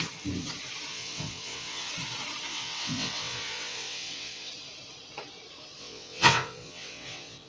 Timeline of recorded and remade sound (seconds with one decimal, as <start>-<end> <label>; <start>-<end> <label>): 0.0-0.9 recorded; 0.9-1.9 remade; 1.9-2.5 recorded; 2.5-4.5 remade; 4.5-5.8 recorded; 5.8-7.5 remade